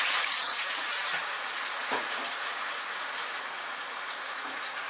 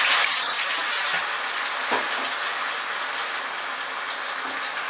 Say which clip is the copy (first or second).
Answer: first